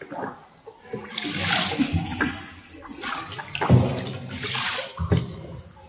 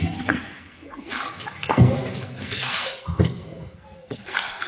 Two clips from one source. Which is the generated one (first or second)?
second